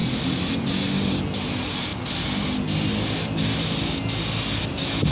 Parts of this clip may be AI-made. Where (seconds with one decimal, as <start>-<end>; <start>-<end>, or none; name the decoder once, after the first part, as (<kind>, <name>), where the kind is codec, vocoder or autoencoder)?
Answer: none